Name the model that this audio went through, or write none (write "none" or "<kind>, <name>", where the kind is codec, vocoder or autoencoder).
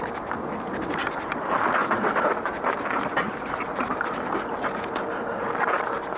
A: none